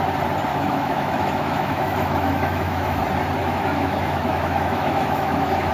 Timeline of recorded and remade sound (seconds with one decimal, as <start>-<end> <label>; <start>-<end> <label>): 0.0-0.5 recorded; 0.5-3.0 remade; 3.0-3.4 recorded; 3.4-5.7 remade